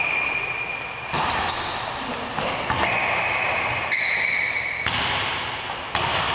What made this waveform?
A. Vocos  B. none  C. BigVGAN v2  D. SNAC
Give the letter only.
B